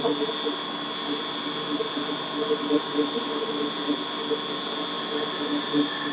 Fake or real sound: real